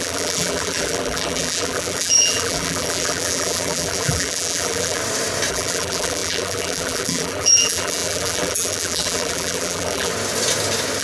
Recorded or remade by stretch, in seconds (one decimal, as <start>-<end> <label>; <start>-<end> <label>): 0.0-5.0 remade; 5.0-5.5 recorded; 5.5-10.1 remade; 10.1-11.0 recorded